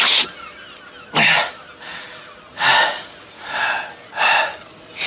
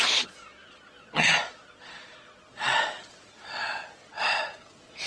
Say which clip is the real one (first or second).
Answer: first